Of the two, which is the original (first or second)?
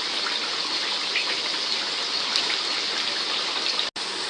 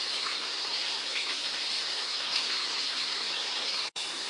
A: first